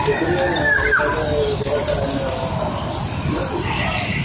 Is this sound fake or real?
real